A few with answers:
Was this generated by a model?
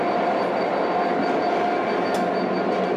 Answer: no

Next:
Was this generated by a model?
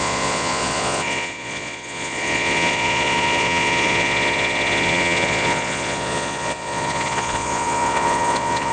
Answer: yes